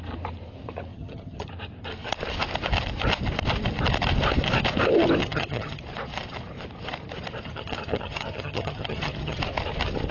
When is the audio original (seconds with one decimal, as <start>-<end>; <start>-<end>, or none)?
0.0-0.9; 1.5-5.2; 5.8-7.4; 9.4-10.1